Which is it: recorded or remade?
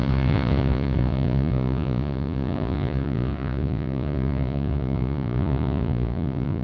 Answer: remade